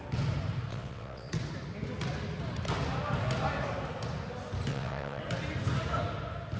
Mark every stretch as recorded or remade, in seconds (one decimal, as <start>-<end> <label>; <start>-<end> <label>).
0.0-0.7 recorded; 0.7-1.3 remade; 1.3-4.7 recorded; 4.7-5.2 remade; 5.2-6.6 recorded